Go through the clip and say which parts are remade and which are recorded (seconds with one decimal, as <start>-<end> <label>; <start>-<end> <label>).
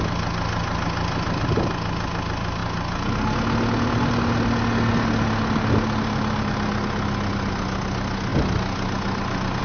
0.0-9.6 recorded